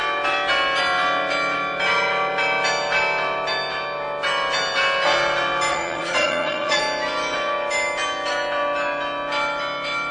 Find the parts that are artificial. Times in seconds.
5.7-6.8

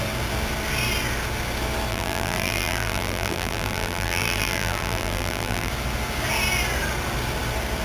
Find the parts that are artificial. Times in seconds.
1.9-5.7

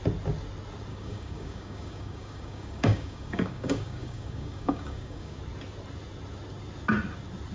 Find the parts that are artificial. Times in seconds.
0.9-5.4

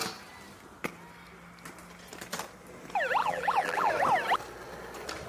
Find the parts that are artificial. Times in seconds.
3.2-3.9

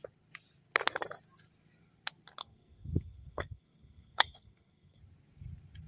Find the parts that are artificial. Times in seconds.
2.4-5.0